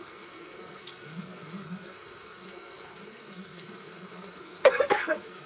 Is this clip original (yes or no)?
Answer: no